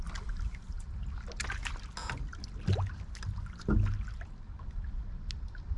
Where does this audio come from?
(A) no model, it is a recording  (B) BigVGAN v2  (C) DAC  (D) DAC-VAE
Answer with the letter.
A